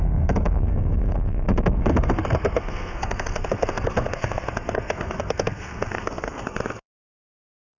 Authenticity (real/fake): fake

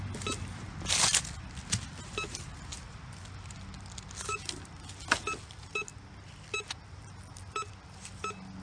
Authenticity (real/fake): real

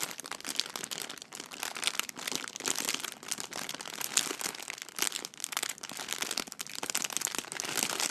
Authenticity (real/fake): real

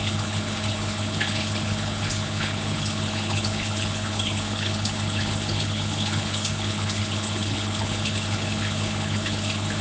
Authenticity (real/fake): fake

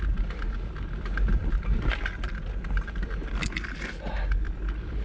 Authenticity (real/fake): real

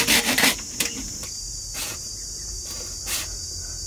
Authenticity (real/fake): fake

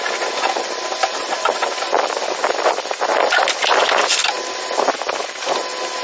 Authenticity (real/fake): real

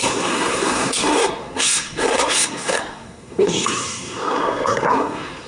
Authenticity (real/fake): fake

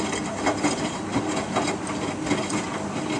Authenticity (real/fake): real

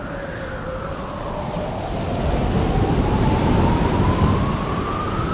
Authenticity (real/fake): real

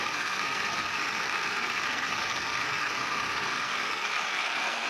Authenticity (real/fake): fake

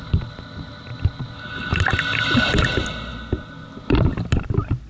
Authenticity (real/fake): real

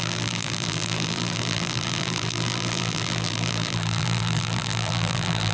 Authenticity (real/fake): fake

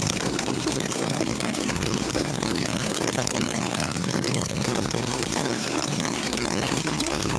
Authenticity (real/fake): fake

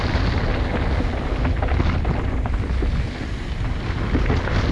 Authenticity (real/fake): real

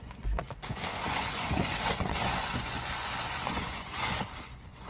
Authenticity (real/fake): fake